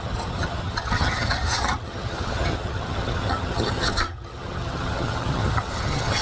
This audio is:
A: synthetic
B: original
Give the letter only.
A